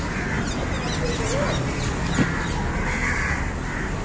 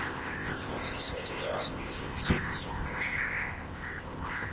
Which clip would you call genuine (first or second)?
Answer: first